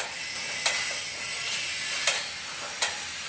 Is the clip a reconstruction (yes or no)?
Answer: no